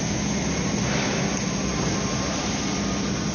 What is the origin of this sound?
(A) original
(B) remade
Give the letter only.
A